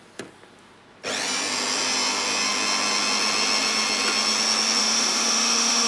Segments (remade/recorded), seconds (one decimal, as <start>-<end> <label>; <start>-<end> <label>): 0.0-4.8 recorded; 4.8-5.9 remade